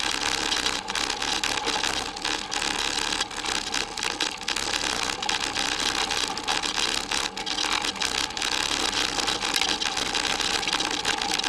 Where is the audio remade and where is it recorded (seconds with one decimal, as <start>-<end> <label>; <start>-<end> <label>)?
0.0-11.5 recorded